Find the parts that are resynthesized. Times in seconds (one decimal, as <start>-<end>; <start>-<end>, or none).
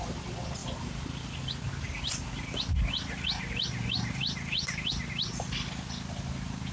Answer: none